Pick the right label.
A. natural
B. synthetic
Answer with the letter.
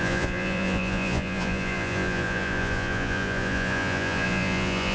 B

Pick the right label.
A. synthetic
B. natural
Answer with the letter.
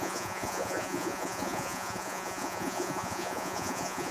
A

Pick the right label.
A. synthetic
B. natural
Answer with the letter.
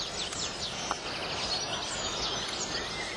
B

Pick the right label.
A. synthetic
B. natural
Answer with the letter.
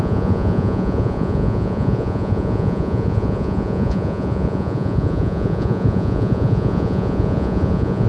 A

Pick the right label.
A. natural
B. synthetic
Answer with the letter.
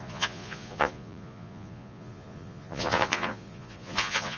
B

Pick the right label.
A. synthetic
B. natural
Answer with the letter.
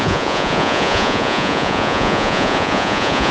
A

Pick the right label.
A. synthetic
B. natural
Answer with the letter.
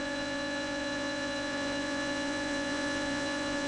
A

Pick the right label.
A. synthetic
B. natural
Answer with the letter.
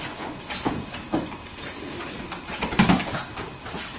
B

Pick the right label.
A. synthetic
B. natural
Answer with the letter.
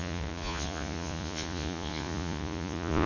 A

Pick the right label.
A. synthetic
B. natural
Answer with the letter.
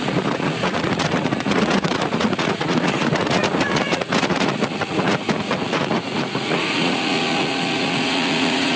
A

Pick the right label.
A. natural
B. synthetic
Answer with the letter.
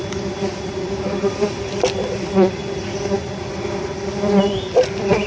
A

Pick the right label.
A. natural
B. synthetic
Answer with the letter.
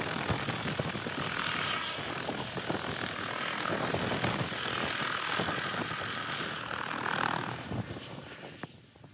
A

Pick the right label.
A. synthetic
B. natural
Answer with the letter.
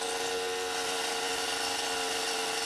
B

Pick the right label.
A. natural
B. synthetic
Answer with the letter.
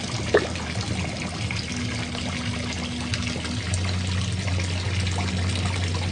A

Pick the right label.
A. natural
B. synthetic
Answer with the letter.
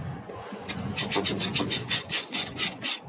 B